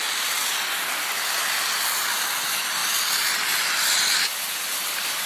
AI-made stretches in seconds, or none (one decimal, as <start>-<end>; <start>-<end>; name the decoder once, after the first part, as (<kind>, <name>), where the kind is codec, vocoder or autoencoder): none

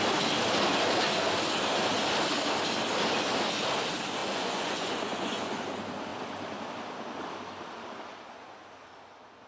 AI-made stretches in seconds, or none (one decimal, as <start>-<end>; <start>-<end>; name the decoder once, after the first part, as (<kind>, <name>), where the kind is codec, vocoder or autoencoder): 4.2-5.6 (vocoder, Vocos)